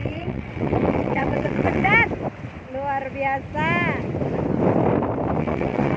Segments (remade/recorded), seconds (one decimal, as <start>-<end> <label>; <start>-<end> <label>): 0.0-1.9 remade; 1.9-5.4 recorded; 5.4-6.0 remade